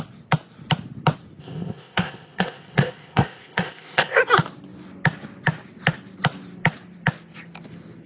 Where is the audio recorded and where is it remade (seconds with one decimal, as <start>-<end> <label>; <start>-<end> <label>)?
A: 0.0-1.4 recorded; 1.4-4.2 remade; 4.2-8.1 recorded